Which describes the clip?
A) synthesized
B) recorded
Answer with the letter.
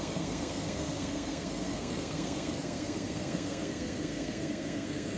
A